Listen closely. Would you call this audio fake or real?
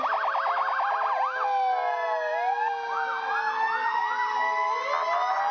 real